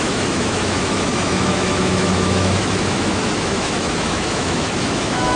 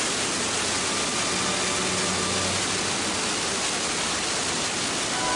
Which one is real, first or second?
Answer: second